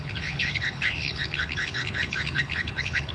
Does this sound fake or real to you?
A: fake